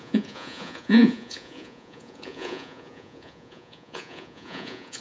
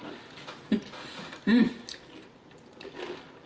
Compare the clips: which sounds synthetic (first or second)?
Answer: first